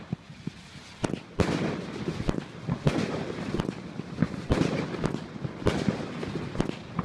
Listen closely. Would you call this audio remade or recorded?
recorded